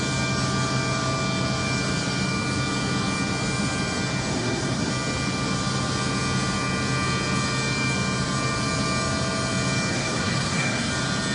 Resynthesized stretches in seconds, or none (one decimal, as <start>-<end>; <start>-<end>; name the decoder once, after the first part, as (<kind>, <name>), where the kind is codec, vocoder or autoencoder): 4.3-4.9 (codec, SNAC); 9.9-10.9